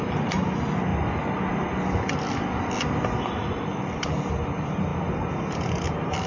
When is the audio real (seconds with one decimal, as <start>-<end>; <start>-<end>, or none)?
0.9-4.3; 4.9-5.7